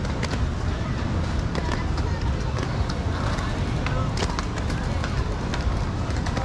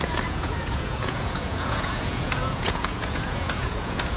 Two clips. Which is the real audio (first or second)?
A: first